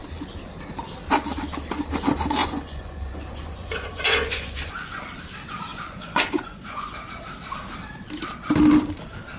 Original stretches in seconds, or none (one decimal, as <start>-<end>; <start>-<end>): 0.0-2.4; 5.0-5.7; 6.9-9.4